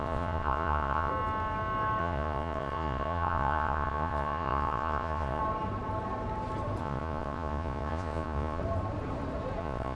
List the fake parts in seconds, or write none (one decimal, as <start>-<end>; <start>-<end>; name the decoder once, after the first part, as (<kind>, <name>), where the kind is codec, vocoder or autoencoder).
0.0-1.1 (vocoder, Vocos); 2.0-5.4; 6.8-8.6; 9.6-10.0